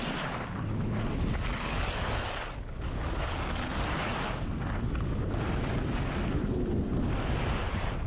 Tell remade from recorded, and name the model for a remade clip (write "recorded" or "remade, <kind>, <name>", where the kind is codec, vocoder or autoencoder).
recorded